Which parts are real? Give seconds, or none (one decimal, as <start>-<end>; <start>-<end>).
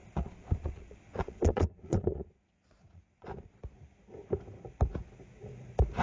3.6-6.0